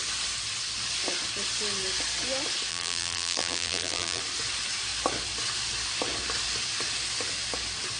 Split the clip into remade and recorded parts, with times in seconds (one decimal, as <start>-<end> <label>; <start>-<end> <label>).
0.0-2.7 recorded; 2.7-4.2 remade; 4.2-8.0 recorded